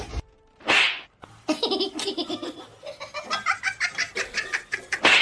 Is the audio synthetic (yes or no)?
no